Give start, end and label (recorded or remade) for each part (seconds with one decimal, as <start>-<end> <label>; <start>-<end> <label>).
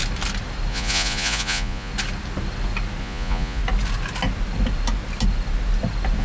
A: 0.0-0.7 recorded; 0.7-1.9 remade; 1.9-3.0 recorded; 3.0-3.6 remade; 3.6-6.2 recorded